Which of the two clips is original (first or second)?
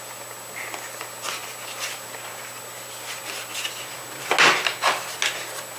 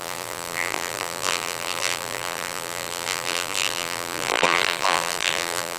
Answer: first